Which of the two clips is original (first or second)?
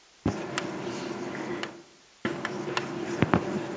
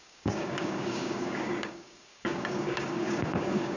first